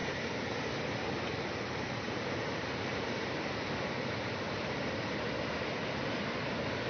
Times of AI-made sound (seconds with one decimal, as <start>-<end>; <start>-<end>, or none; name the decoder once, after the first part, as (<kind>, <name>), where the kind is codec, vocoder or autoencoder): 0.0-4.1 (vocoder, BigVGAN v2)